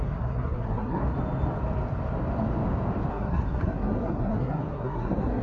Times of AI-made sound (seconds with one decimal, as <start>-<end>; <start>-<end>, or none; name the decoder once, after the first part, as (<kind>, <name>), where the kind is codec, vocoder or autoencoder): 0.0-1.0 (codec, SNAC); 3.1-5.4

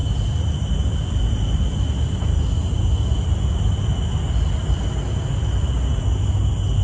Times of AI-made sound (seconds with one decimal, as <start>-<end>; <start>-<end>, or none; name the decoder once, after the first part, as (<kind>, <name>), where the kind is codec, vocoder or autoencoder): none

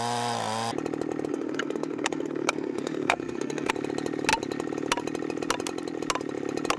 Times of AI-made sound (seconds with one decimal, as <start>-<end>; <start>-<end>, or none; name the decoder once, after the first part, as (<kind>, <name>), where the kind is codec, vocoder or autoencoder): 1.3-3.7 (codec, SNAC)

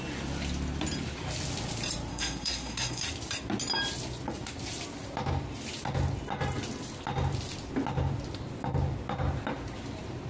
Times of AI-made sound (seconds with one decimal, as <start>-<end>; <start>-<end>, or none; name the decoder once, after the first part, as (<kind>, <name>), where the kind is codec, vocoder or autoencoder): 2.1-3.0 (codec, SNAC)

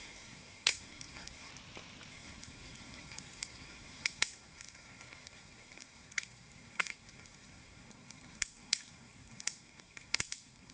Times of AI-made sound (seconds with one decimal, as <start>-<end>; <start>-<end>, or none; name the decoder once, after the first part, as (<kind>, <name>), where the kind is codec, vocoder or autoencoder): 0.0-1.5 (codec, SNAC); 2.1-10.7